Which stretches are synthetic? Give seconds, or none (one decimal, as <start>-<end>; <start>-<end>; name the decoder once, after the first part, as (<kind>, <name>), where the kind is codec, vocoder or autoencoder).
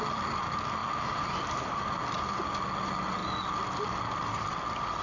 none